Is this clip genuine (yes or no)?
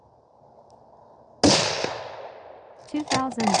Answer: yes